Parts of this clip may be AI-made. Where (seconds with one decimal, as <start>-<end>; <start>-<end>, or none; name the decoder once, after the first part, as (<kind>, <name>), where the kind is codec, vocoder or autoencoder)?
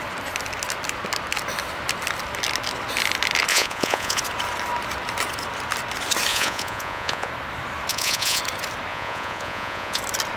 3.5-4.2 (vocoder, Vocos); 6.3-7.3; 7.9-8.4; 8.9-10.0